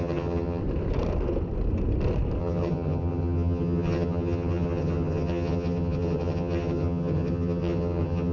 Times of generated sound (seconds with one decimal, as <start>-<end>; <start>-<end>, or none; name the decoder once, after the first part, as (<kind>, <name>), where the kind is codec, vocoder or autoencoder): 0.0-0.6 (vocoder, HiFi-GAN); 2.4-8.3